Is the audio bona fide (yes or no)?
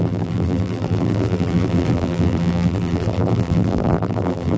no